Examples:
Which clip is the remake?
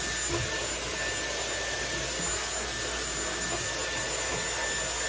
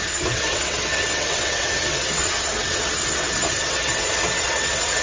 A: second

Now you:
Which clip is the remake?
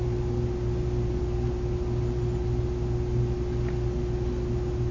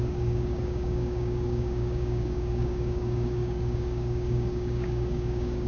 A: second